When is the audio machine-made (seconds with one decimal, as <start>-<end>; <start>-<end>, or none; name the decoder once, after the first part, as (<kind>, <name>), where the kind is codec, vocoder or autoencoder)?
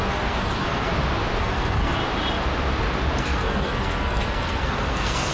0.0-0.9 (codec, SNAC); 1.4-2.0; 3.2-5.3